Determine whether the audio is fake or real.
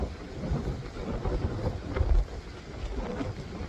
real